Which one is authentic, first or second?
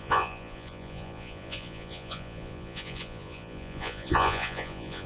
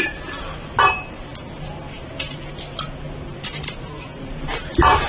second